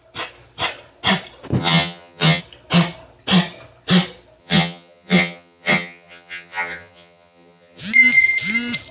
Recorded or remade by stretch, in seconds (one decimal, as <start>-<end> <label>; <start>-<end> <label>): 0.0-1.6 recorded; 1.6-2.4 remade; 2.4-4.4 recorded; 4.4-7.8 remade; 7.8-8.9 recorded